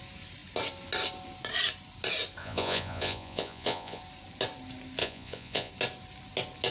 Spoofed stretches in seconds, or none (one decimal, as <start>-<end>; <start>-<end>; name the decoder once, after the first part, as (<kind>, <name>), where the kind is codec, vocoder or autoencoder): 2.4-4.0 (vocoder, Vocos); 5.0-5.7